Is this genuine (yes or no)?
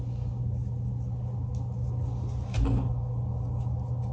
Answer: yes